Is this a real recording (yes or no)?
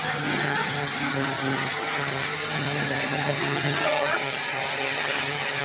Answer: no